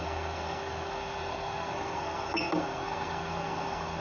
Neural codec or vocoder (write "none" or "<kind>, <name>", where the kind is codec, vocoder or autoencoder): codec, SNAC